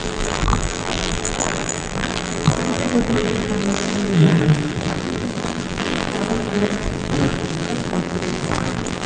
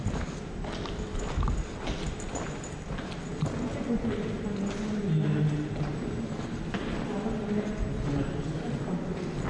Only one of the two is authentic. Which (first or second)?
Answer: second